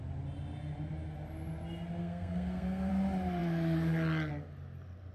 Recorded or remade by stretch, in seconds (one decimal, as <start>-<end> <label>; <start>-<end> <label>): 0.0-2.0 recorded; 2.0-2.9 remade; 2.9-5.1 recorded